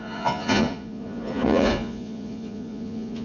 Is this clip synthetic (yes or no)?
yes